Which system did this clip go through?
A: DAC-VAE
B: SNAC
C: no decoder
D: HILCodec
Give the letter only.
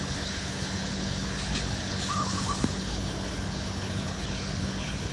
D